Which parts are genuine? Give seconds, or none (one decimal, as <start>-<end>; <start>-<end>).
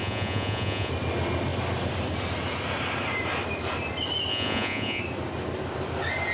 0.9-4.3; 5.0-6.3